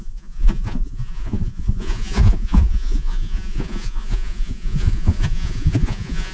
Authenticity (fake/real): fake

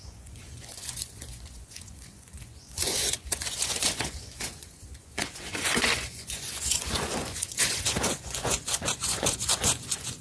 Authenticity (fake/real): fake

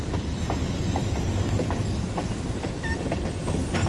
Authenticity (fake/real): real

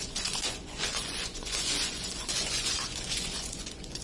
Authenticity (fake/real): fake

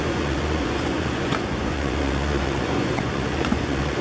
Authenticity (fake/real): fake